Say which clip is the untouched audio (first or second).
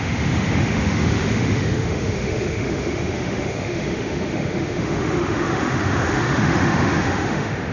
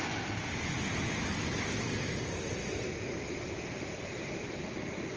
second